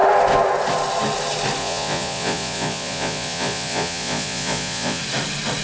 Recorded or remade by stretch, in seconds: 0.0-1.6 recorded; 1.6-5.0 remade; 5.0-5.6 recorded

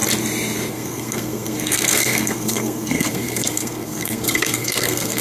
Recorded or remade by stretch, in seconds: 0.0-0.7 recorded; 0.7-5.2 remade

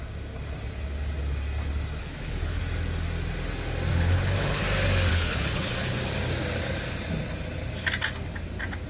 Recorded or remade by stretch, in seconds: 0.0-2.0 recorded; 2.0-2.6 remade; 2.6-3.9 recorded; 3.9-4.6 remade; 4.6-5.1 recorded; 5.1-6.0 remade; 6.0-8.9 recorded

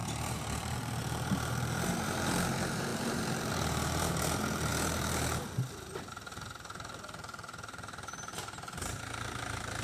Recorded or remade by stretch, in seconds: 0.0-9.8 remade